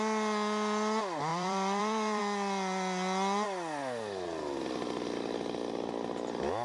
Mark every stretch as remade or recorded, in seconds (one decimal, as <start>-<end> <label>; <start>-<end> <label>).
0.0-1.3 recorded; 1.3-2.2 remade; 2.2-6.6 recorded